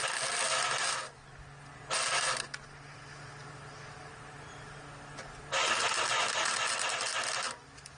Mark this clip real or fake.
real